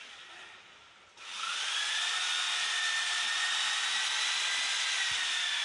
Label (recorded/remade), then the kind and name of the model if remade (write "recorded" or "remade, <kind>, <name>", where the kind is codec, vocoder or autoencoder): recorded